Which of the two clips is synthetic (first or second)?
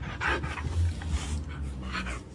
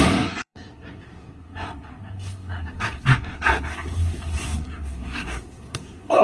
second